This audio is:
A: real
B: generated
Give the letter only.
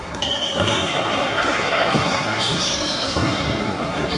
B